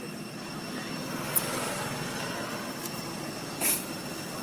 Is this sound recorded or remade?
recorded